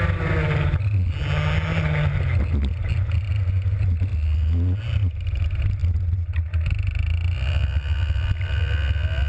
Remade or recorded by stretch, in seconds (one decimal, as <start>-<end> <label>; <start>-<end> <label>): 0.0-9.3 recorded